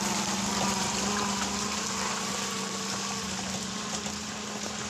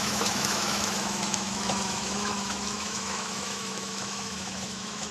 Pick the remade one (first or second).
second